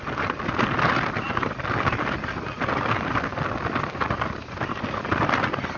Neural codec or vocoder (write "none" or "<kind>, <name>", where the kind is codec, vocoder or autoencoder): none